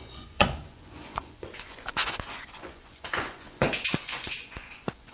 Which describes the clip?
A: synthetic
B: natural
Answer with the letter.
A